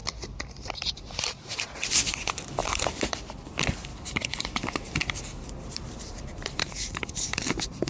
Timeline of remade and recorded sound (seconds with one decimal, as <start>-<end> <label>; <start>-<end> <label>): 0.0-1.1 remade; 1.1-2.6 recorded; 2.6-3.2 remade; 3.2-3.9 recorded; 3.9-7.9 remade